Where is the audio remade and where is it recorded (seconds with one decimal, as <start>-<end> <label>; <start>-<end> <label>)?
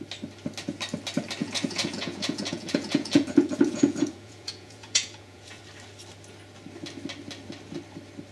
0.0-1.4 recorded; 1.4-5.6 remade; 5.6-8.3 recorded